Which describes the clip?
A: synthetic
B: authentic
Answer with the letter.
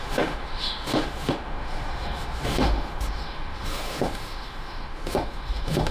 A